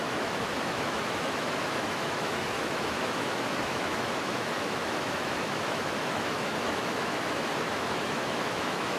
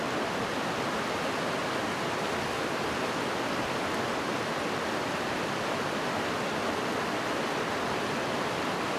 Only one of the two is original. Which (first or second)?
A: second